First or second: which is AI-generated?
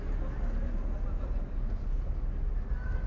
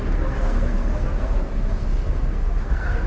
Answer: second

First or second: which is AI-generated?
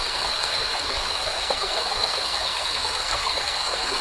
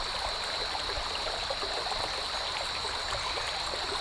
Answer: first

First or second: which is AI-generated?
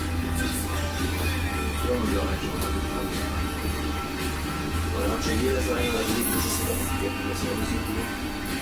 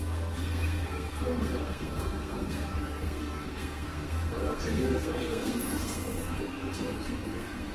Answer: second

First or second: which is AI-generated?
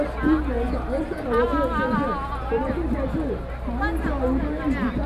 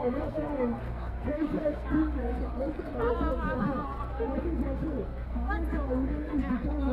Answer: second